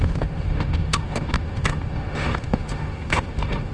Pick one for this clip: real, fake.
fake